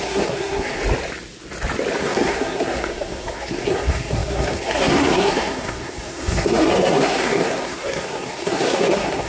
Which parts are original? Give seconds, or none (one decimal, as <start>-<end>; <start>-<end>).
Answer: 0.8-2.0